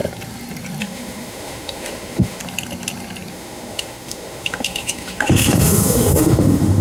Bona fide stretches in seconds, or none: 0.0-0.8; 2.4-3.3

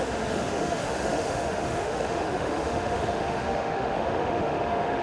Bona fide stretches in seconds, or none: none

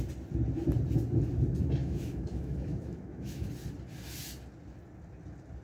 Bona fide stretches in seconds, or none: 0.0-1.8; 3.5-5.6

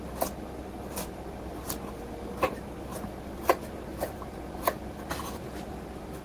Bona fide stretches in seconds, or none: 0.0-6.2

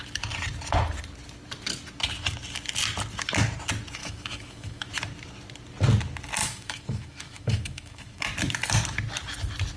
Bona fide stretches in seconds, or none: 0.0-4.0; 4.9-6.4; 8.2-9.8

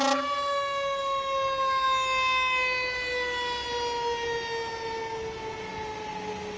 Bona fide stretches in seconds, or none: 0.0-6.6